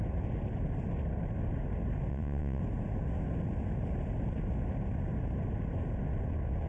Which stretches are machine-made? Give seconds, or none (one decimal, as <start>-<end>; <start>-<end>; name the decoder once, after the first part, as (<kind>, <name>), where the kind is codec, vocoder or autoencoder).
2.1-2.6 (vocoder, WaveNeXt)

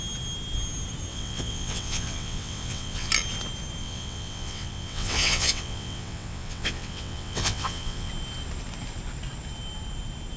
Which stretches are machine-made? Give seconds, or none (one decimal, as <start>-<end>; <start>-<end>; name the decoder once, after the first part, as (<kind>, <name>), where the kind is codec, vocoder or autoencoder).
1.1-3.1 (vocoder, WaveNeXt); 3.8-8.1

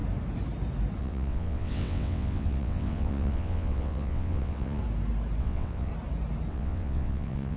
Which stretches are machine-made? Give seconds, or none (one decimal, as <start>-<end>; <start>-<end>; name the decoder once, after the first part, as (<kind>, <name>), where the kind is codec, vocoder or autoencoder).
1.0-4.8 (vocoder, WaveNeXt); 5.4-5.9; 6.5-7.6

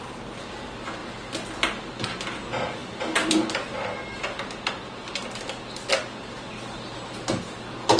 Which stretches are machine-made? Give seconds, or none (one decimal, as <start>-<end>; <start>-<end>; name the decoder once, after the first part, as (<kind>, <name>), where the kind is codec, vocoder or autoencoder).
none

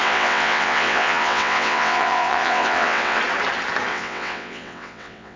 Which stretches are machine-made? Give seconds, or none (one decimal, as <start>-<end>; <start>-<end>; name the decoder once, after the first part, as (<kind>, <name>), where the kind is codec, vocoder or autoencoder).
0.0-3.2 (vocoder, WaveNeXt); 3.9-5.4

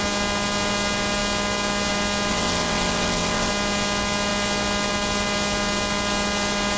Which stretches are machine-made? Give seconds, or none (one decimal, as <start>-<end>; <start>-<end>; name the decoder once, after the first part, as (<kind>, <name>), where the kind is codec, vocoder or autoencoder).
2.3-3.5 (vocoder, WaveNeXt)